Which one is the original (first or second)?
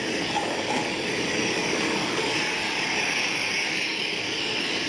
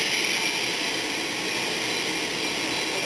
second